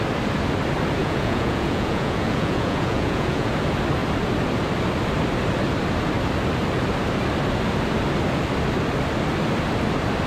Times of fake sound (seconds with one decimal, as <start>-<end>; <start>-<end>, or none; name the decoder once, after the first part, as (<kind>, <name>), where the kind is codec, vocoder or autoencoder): 1.0-3.5 (vocoder, Vocos)